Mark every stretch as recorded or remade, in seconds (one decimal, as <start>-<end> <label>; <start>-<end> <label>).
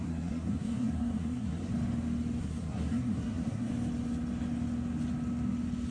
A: 0.0-1.7 remade; 1.7-2.4 recorded; 2.4-3.7 remade; 3.7-5.9 recorded